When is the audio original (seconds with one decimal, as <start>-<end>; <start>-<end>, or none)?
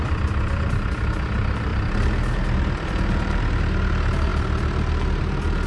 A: none